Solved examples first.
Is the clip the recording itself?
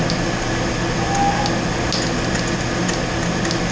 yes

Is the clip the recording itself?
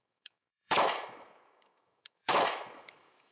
no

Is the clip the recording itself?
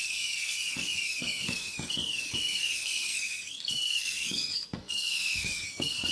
no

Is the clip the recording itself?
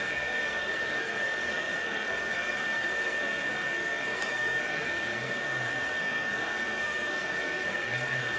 no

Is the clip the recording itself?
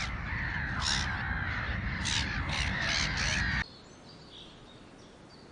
no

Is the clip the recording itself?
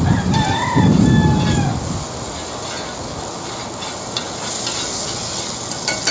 yes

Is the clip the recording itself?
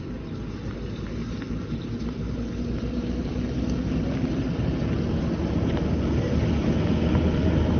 yes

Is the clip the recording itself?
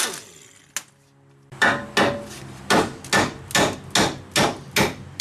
yes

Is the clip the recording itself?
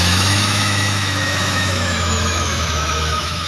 no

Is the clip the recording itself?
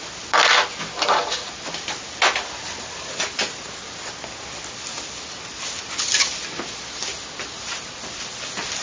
yes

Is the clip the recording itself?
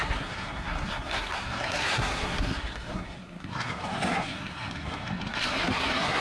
no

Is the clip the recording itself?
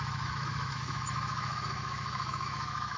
no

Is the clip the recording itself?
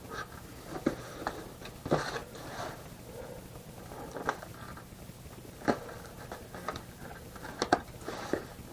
yes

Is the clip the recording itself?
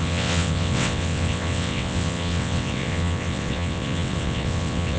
no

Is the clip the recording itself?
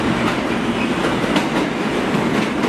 yes